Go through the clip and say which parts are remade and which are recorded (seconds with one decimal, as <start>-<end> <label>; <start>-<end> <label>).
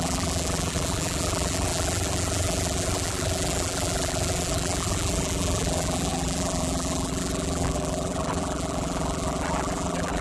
0.0-10.2 remade